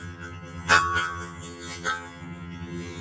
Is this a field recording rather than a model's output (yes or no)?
no